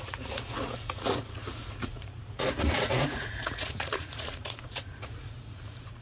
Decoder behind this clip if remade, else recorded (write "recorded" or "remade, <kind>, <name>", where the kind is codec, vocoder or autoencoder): remade, vocoder, Vocos